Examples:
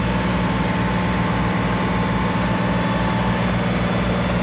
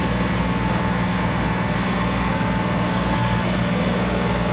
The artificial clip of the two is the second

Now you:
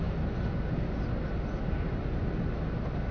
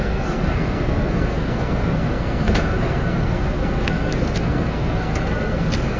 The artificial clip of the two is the second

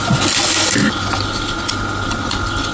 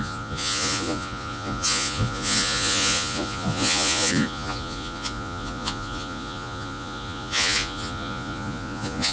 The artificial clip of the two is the second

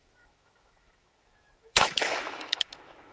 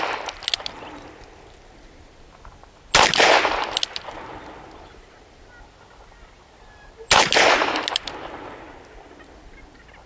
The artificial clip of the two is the first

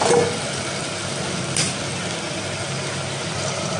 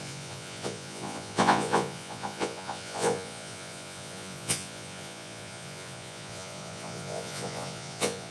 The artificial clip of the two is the second